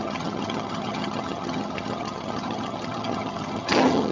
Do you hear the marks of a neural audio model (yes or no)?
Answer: yes